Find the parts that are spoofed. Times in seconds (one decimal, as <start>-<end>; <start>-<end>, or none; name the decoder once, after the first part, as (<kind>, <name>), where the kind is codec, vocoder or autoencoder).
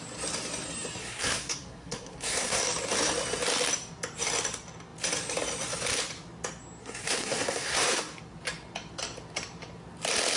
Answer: 1.0-2.6 (codec, SNAC); 6.8-8.0